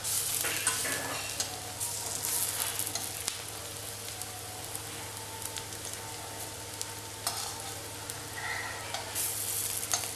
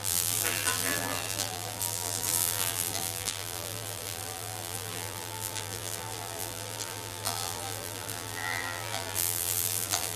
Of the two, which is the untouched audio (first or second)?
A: first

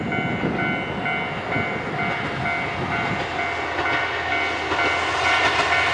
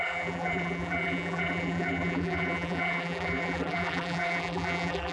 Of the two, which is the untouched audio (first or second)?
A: first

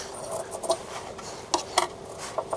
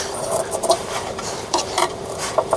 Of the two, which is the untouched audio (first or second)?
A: first